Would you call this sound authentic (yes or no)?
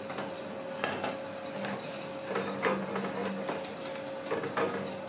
yes